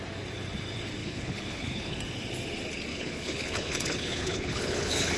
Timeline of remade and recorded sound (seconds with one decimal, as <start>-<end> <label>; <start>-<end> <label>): 0.0-1.0 recorded; 1.0-2.0 remade; 2.0-2.9 recorded; 2.9-5.2 remade

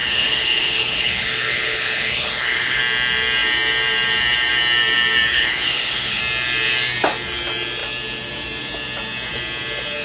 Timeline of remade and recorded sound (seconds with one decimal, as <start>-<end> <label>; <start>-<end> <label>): 0.0-2.8 remade; 2.8-5.3 recorded; 5.3-6.2 remade; 6.2-10.0 recorded